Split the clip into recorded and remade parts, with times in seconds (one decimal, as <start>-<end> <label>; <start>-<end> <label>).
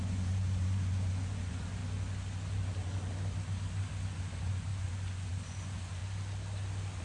0.0-1.8 remade; 1.8-4.2 recorded; 4.2-6.0 remade; 6.0-7.0 recorded